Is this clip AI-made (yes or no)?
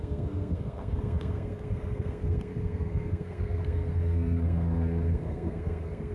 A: yes